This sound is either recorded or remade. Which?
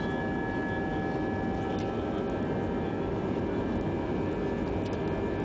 recorded